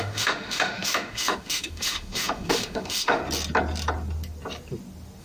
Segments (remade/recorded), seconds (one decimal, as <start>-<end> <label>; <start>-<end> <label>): 0.0-3.2 remade; 3.2-5.2 recorded